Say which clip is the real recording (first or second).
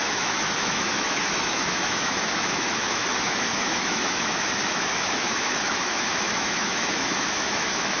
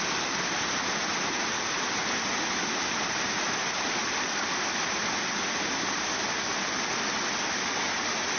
second